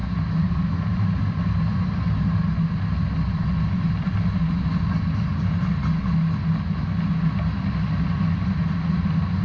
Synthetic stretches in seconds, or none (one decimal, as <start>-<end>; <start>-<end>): none